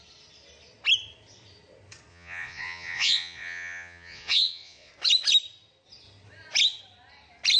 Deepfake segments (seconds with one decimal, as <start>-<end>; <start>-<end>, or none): 2.1-4.9